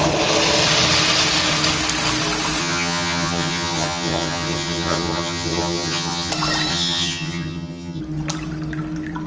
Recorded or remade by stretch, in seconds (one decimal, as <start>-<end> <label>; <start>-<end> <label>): 0.0-2.6 recorded; 2.6-6.3 remade; 6.3-6.7 recorded; 6.7-8.0 remade; 8.0-9.3 recorded